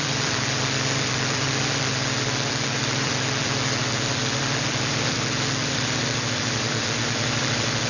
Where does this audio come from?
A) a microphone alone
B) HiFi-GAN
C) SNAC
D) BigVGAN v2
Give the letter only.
D